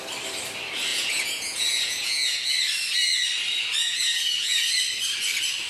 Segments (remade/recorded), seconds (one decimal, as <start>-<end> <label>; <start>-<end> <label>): 0.0-0.9 recorded; 0.9-2.5 remade; 2.5-3.8 recorded; 3.8-4.7 remade; 4.7-5.7 recorded